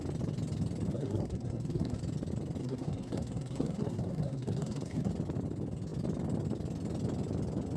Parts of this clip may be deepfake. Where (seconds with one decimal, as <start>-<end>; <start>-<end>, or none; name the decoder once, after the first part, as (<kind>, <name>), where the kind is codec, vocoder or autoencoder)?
0.9-2.0 (codec, SNAC); 2.6-5.1